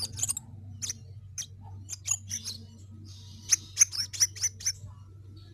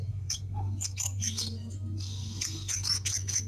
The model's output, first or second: second